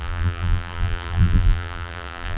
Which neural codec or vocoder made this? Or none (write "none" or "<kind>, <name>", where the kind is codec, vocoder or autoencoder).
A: vocoder, BigVGAN v2